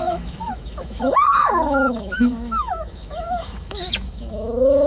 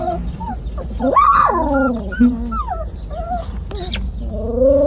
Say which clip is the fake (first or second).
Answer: first